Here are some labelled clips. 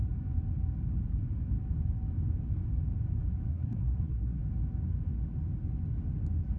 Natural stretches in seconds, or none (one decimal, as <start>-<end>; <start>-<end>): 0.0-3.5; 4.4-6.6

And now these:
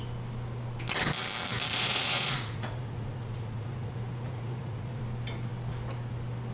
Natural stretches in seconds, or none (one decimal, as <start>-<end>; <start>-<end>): 0.0-1.7; 5.0-6.5

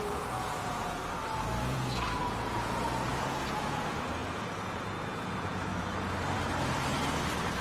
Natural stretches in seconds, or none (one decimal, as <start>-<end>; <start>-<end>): 1.0-1.6; 5.7-7.6